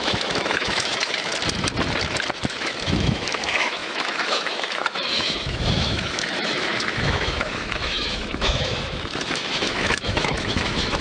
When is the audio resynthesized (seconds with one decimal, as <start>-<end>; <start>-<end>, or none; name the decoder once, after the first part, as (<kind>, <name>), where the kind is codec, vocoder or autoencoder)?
0.0-1.3 (autoencoder, DAC-VAE); 2.6-11.0